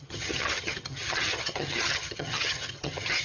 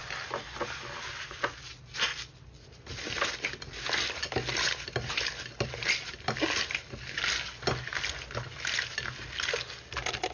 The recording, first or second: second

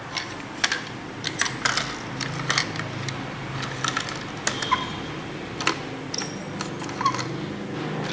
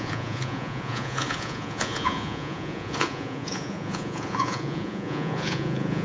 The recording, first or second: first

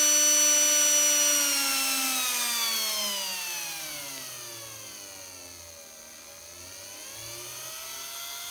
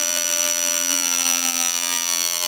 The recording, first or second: first